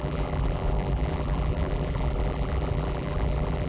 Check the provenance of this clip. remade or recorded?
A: remade